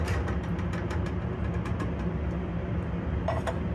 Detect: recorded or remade recorded